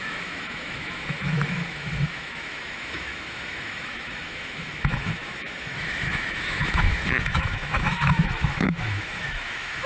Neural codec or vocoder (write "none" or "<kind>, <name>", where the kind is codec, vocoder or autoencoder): autoencoder, DAC-VAE